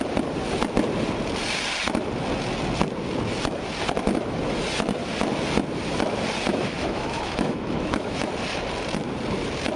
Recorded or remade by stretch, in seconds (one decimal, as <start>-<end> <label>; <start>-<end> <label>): 0.0-6.5 recorded; 6.5-8.3 remade; 8.3-9.8 recorded